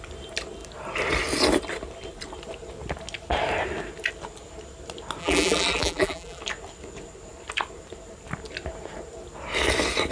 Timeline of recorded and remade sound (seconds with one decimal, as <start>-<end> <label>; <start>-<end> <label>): 0.0-5.2 recorded; 5.2-6.4 remade; 6.4-10.1 recorded